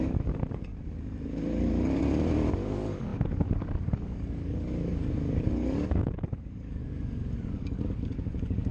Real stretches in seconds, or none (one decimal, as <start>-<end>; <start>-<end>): 0.7-1.4; 2.0-2.5